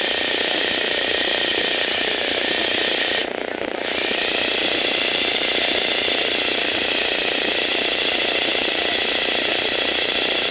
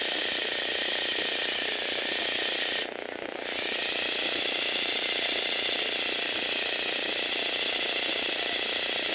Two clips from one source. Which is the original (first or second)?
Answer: second